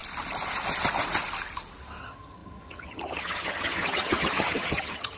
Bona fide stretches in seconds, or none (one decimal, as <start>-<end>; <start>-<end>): 0.0-2.0